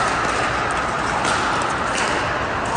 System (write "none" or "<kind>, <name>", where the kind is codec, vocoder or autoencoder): none